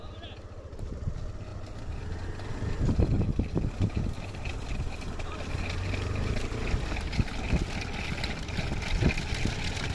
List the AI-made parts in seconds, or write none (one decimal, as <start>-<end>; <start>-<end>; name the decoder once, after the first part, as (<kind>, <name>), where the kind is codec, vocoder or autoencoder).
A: none